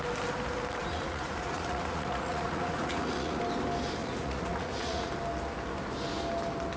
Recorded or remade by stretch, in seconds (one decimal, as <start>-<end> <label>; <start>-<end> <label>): 0.0-0.8 recorded; 0.8-3.4 remade; 3.4-4.0 recorded; 4.0-5.1 remade; 5.1-6.8 recorded